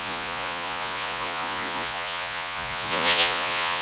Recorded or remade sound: remade